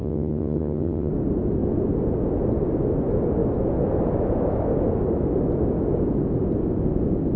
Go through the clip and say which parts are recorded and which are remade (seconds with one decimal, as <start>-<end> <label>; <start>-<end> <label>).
0.0-1.1 remade; 1.1-7.4 recorded

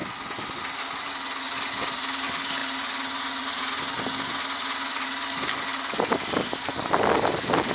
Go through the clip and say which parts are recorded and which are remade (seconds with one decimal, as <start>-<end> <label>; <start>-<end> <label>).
0.0-7.7 recorded

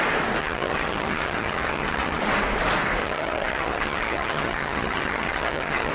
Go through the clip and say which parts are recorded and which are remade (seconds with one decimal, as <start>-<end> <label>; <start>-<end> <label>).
0.0-0.4 recorded; 0.4-2.2 remade; 2.2-3.0 recorded; 3.0-5.9 remade

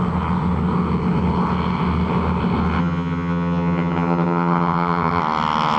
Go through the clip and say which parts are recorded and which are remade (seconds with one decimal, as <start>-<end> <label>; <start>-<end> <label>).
0.0-2.8 recorded; 2.8-5.2 remade; 5.2-5.8 recorded